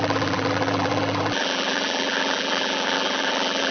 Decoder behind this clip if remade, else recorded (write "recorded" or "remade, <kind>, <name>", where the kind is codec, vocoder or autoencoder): remade, vocoder, BigVGAN v2